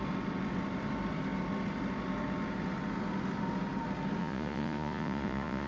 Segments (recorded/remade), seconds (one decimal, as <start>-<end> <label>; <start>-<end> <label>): 0.0-4.2 recorded; 4.2-5.7 remade